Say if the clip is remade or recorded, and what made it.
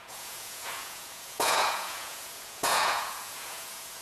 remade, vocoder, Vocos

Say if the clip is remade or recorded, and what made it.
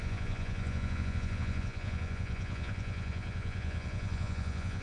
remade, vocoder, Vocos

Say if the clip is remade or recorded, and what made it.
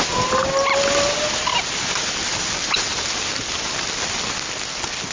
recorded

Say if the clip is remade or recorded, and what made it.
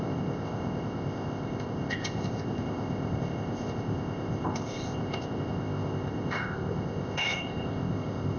remade, codec, ZipCodec